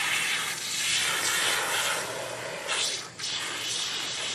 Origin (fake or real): real